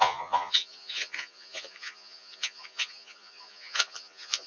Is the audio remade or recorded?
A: remade